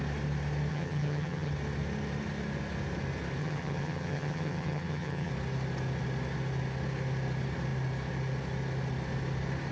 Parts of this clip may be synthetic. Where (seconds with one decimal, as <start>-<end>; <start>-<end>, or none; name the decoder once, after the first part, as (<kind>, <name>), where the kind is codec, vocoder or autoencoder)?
0.7-1.5 (vocoder, HiFi-GAN); 3.4-5.3